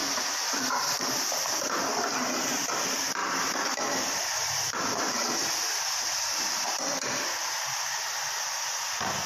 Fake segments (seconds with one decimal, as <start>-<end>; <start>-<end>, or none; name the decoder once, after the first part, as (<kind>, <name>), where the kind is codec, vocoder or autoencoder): 0.0-2.7 (vocoder, BigVGAN v2); 6.1-8.1